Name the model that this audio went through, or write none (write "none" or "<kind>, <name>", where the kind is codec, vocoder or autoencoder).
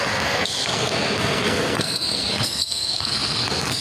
codec, SNAC